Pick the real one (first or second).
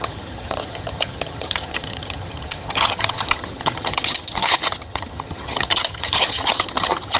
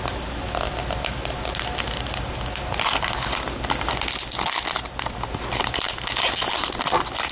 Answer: second